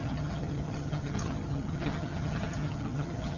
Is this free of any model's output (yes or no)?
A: no